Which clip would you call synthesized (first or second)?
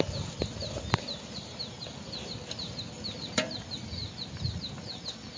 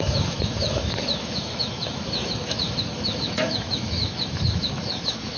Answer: second